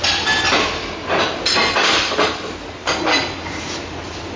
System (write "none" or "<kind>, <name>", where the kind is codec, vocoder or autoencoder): none